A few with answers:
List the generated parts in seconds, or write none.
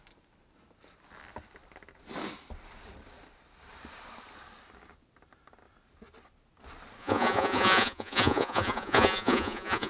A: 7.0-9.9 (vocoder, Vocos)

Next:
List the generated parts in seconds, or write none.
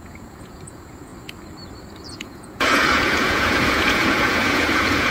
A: 0.0-1.1 (vocoder, Vocos); 2.1-5.1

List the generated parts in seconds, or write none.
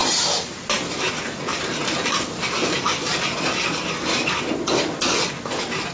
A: none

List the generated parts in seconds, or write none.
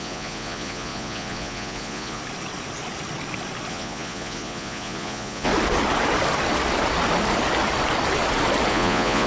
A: 0.0-2.2 (vocoder, Vocos); 3.7-5.5; 8.7-9.3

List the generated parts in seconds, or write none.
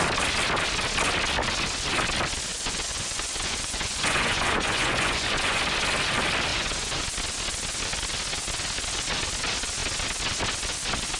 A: 2.5-5.6 (vocoder, Vocos); 6.5-7.0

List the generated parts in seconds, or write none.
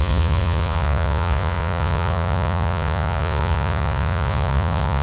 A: 0.0-5.0 (vocoder, Vocos)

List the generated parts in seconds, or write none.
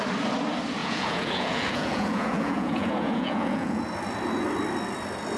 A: 0.8-3.8 (vocoder, Vocos)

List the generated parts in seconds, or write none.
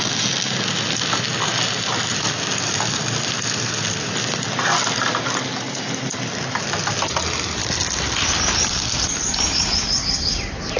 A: none